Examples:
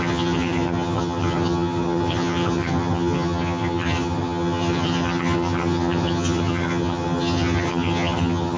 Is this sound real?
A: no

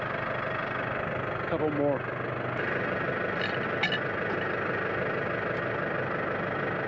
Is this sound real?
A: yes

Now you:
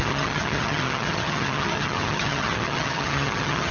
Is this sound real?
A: no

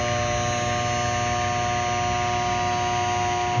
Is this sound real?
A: yes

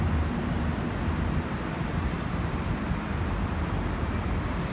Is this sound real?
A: yes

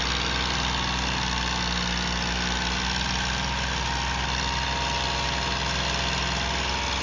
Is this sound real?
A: yes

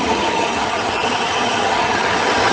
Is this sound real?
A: no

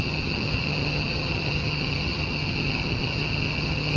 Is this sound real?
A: no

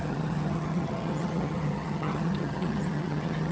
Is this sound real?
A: no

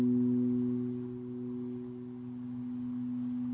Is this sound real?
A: yes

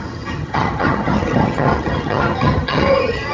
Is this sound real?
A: no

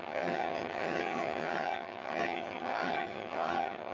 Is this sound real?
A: no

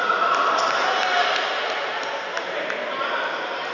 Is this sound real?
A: yes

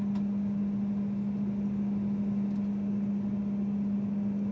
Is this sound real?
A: yes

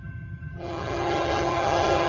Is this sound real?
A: no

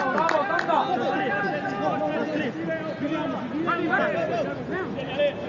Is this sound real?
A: yes